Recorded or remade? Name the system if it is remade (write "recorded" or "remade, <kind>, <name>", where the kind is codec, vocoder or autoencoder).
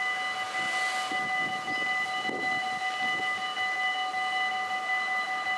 recorded